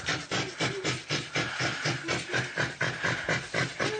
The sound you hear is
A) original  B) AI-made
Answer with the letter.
B